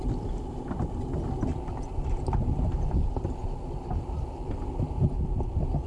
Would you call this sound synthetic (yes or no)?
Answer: no